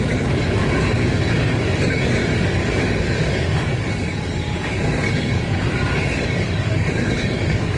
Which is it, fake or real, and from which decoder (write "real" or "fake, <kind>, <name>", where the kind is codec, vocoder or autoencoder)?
fake, codec, DAC